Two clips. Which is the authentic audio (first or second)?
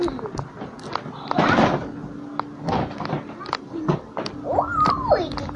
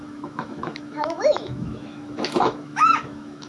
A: first